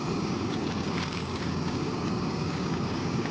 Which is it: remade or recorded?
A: remade